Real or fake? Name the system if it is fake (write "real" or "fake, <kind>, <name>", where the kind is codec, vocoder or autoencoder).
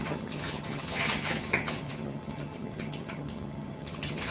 fake, vocoder, HiFi-GAN